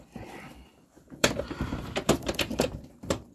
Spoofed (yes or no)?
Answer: yes